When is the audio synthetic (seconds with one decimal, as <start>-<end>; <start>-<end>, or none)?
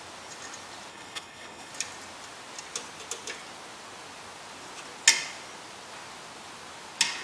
0.9-1.7